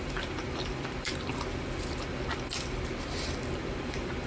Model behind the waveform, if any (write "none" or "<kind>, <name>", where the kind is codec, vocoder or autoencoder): vocoder, BigVGAN v2